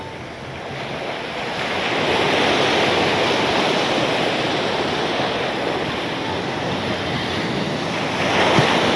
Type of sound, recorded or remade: recorded